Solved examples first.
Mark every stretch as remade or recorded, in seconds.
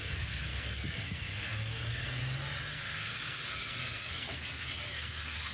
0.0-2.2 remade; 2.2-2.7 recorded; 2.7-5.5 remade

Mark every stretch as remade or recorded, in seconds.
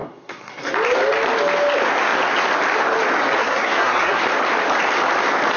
0.0-0.7 remade; 0.7-3.4 recorded; 3.4-4.2 remade; 4.2-5.6 recorded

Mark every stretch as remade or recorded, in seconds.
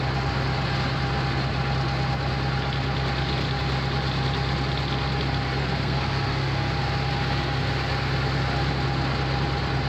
0.0-5.6 recorded; 5.6-6.7 remade; 6.7-9.9 recorded